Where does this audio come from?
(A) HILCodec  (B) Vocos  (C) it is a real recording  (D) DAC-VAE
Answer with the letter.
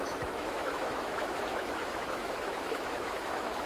D